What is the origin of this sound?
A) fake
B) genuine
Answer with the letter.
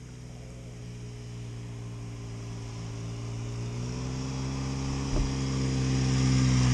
B